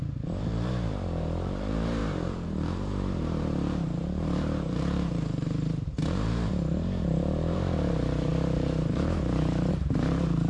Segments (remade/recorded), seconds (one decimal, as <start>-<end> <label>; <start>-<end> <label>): 0.0-10.5 remade